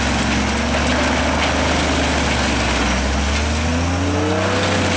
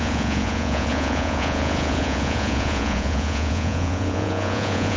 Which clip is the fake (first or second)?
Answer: second